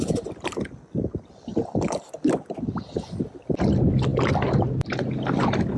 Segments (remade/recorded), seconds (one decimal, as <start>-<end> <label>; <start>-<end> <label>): 0.0-5.8 recorded